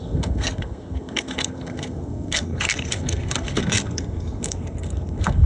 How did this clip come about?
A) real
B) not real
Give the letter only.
B